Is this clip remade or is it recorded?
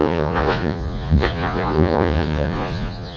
remade